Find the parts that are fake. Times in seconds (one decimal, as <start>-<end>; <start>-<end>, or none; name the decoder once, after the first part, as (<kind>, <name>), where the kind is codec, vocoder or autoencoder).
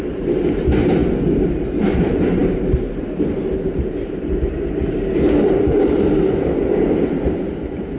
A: none